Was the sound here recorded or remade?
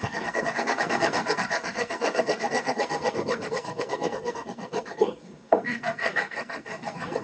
remade